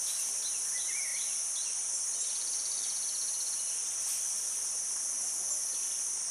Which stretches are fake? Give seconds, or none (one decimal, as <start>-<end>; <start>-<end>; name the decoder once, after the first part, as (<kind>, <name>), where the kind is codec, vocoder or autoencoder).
none